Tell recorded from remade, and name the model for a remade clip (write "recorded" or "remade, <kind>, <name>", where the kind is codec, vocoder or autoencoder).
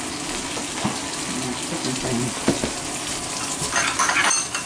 recorded